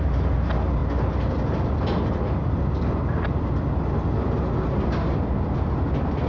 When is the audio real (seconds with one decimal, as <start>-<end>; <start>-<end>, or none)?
0.0-6.3